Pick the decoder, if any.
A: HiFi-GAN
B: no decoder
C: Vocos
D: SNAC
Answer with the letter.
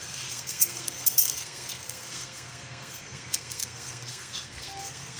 D